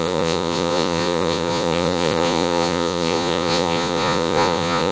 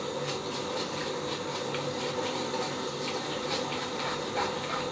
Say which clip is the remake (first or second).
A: first